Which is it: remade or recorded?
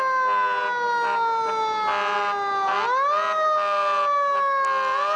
recorded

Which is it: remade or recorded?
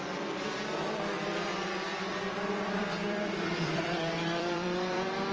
remade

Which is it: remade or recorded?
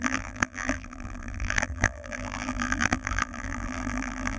remade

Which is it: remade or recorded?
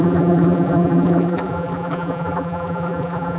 remade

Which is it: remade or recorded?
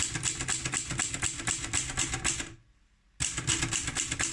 recorded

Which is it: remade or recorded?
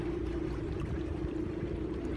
remade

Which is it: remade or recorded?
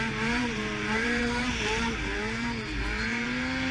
remade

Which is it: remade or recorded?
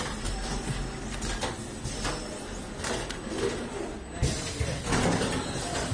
recorded